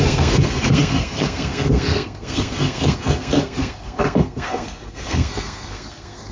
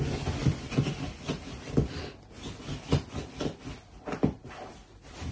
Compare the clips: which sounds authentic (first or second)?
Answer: second